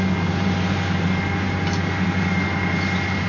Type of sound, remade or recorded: recorded